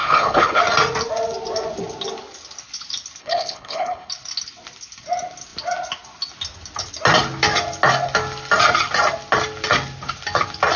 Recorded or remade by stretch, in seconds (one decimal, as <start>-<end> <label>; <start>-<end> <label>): 0.0-0.6 remade; 0.6-3.2 recorded; 3.2-4.1 remade; 4.1-10.8 recorded